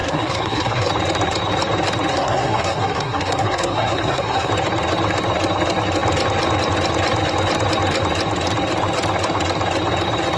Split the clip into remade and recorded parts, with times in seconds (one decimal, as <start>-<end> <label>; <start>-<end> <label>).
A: 0.0-0.9 remade; 0.9-2.1 recorded; 2.1-4.5 remade; 4.5-10.4 recorded

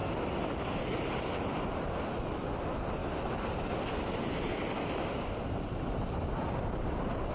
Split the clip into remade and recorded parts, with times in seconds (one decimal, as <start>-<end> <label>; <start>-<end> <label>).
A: 0.0-7.3 recorded

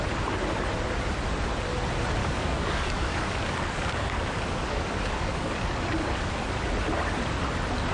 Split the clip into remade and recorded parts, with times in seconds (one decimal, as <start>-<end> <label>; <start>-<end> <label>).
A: 0.0-2.2 recorded; 2.2-6.3 remade; 6.3-7.9 recorded